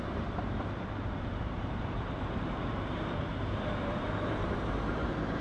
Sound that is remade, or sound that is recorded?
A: remade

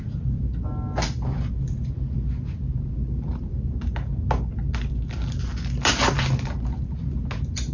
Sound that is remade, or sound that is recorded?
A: recorded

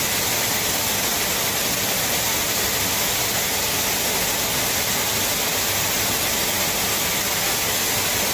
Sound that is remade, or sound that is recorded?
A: recorded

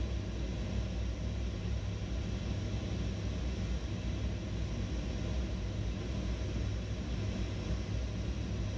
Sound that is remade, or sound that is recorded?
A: recorded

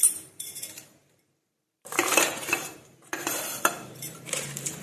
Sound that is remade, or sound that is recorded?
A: remade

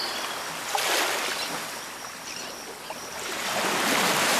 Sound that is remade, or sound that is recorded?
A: remade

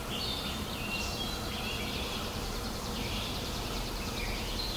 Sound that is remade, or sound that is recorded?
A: remade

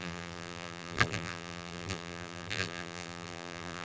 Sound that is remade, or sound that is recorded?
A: remade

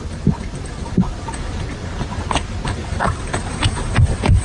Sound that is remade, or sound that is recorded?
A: recorded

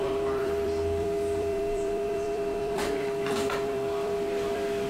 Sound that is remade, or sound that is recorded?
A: remade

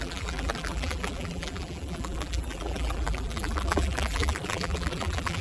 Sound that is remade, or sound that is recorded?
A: remade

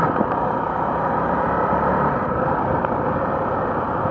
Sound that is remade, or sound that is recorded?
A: remade